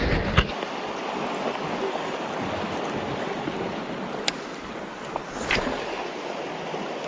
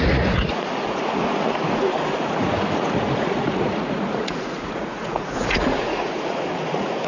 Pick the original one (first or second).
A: first